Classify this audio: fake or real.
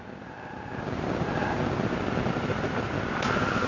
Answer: real